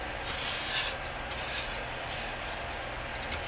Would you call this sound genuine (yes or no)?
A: yes